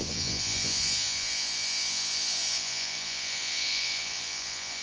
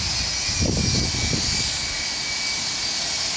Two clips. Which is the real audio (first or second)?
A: second